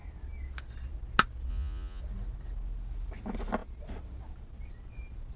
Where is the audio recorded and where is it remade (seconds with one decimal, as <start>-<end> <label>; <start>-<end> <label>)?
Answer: 0.0-1.5 recorded; 1.5-2.0 remade; 2.0-5.4 recorded